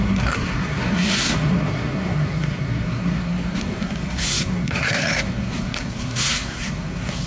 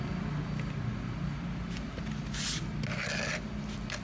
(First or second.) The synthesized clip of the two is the first